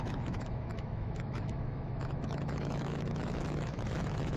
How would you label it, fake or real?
fake